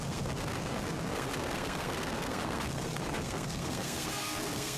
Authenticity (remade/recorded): remade